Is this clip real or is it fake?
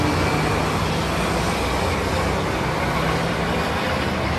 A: real